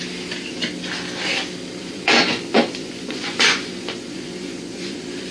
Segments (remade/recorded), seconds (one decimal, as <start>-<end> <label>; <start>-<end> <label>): 0.0-1.8 recorded; 1.8-5.3 remade